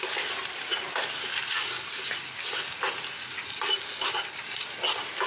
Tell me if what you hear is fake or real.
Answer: real